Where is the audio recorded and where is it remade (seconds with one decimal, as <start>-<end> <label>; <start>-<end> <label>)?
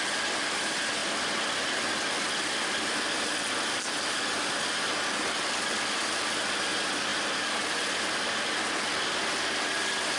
0.0-10.2 recorded